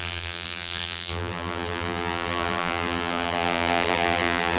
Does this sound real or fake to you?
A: fake